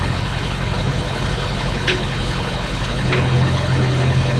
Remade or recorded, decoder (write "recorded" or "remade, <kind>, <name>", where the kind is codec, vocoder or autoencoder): remade, codec, HILCodec